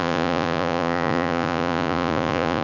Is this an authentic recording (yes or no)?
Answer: no